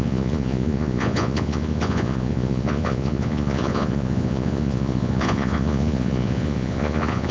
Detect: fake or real fake